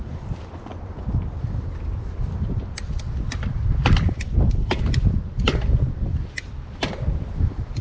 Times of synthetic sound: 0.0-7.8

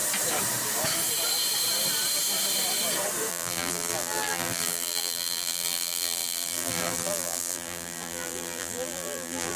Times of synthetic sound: 3.3-9.6

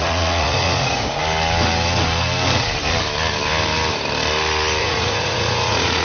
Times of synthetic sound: 0.0-1.2; 4.8-6.0

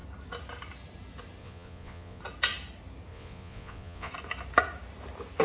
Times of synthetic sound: 1.4-2.2; 3.1-4.1

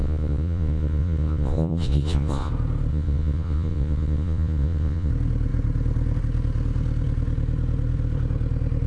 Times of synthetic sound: 0.0-2.5; 2.9-5.1

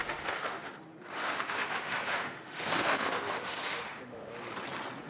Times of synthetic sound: 0.0-0.7; 1.2-4.3